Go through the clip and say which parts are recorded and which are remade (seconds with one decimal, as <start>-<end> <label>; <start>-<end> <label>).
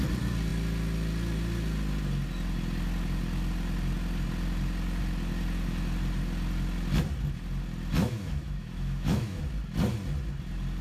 0.0-8.0 recorded; 8.0-9.4 remade; 9.4-10.8 recorded